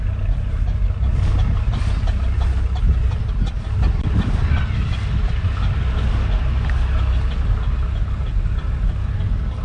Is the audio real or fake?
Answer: real